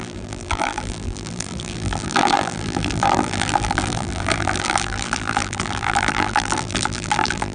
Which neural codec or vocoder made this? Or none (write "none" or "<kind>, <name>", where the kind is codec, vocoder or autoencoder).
vocoder, BigVGAN v2